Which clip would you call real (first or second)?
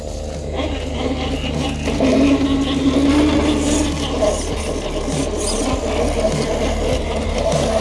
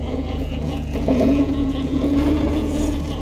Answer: first